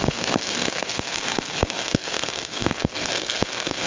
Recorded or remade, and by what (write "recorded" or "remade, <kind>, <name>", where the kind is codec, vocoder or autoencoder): remade, codec, SNAC